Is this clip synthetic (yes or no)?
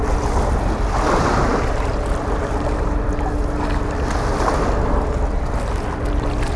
no